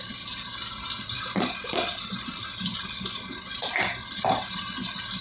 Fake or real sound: real